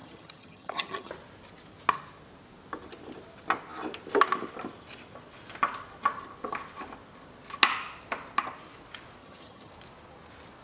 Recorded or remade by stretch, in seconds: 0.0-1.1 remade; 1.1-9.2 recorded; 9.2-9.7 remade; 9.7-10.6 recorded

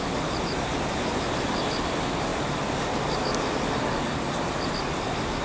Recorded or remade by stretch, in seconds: 0.0-5.4 recorded

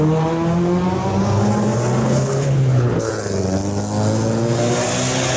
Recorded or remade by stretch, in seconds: 0.0-2.0 recorded; 2.0-3.1 remade; 3.1-5.4 recorded